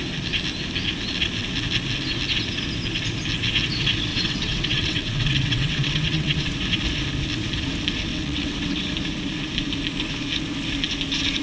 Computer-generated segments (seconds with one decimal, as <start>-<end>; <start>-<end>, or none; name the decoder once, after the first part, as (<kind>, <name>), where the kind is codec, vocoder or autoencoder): 4.1-6.5 (vocoder, WaveNeXt); 8.1-8.8